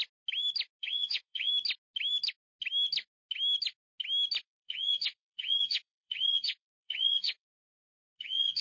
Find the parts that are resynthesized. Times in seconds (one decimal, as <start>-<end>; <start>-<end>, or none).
0.8-1.5; 4.4-8.6